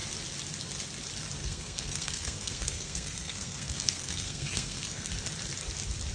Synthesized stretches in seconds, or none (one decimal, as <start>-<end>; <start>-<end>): 1.4-5.1